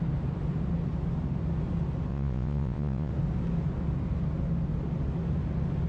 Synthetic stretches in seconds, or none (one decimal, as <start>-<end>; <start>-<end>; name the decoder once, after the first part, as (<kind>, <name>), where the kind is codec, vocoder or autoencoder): 2.1-3.1 (vocoder, Vocos)